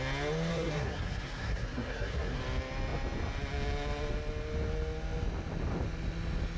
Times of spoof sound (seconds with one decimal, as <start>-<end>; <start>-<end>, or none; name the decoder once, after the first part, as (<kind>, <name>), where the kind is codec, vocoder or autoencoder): 0.5-2.4 (codec, SNAC)